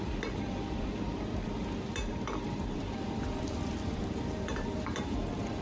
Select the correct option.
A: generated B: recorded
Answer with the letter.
A